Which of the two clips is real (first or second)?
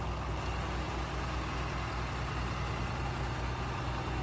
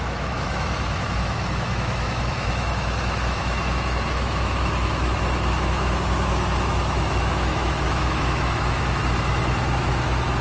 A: first